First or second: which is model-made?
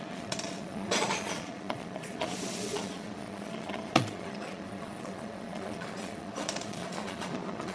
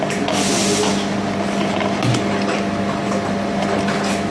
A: first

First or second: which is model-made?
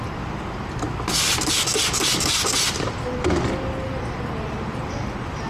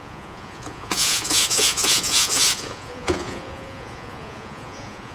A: second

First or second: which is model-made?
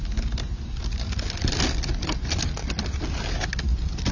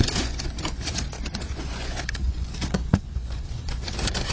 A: second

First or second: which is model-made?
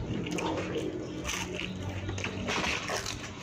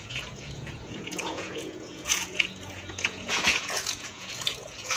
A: second